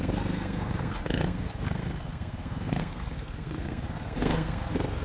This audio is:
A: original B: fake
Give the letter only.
B